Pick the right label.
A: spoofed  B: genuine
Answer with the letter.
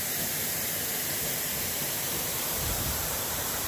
A